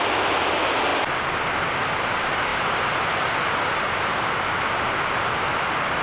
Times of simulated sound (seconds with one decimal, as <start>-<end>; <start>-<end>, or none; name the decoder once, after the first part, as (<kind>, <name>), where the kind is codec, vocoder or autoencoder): 0.9-1.4 (vocoder, BigVGAN v2); 2.5-4.2